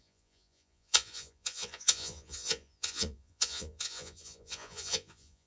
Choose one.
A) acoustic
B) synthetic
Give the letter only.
B